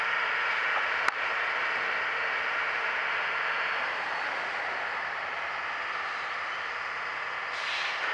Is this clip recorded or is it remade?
recorded